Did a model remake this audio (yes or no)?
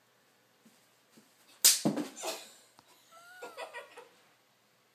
no